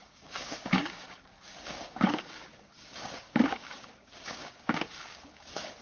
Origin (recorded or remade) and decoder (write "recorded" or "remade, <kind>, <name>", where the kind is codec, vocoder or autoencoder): remade, codec, DAC